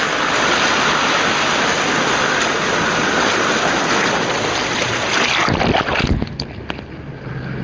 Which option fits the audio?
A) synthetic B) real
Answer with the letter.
B